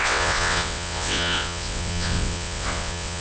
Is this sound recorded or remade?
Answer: remade